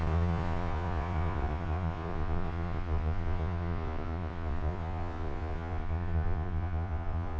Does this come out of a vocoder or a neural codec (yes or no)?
yes